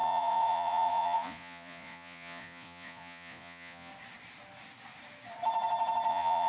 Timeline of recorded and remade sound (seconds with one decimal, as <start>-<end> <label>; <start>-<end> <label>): 0.0-3.9 remade; 3.9-6.1 recorded; 6.1-6.5 remade